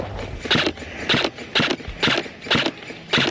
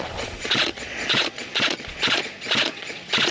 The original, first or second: first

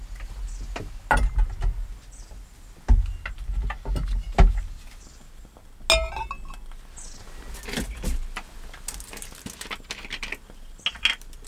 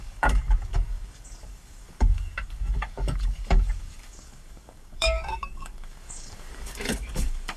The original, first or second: first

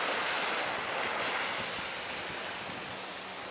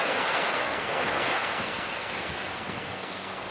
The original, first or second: first